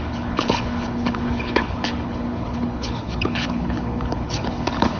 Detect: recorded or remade remade